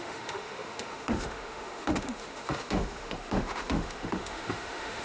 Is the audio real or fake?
fake